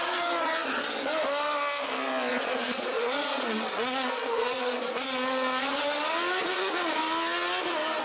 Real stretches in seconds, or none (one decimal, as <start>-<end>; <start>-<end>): 0.0-2.3; 5.7-6.4; 7.0-8.0